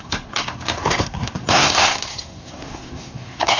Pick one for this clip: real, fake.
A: fake